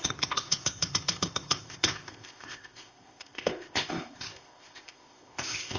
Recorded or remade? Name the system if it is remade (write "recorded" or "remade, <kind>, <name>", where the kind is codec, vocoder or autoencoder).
remade, codec, ZipCodec